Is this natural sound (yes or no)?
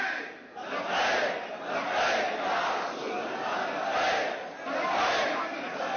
yes